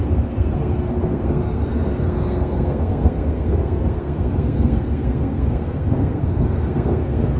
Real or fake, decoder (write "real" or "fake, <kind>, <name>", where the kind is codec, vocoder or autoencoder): fake, codec, SNAC